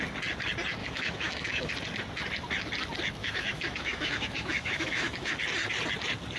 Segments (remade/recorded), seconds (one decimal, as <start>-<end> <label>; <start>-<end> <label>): 0.0-0.8 recorded; 0.8-1.7 remade; 1.7-3.2 recorded; 3.2-5.3 remade; 5.3-6.4 recorded